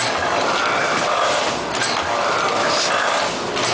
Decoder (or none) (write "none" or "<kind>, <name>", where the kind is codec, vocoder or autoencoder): none